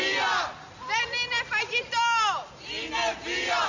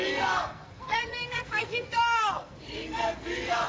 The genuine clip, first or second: first